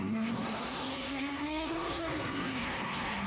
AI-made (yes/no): yes